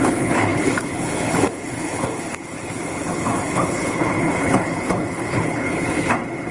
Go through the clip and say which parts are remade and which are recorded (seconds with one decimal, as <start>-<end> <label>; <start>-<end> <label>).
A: 0.0-6.5 remade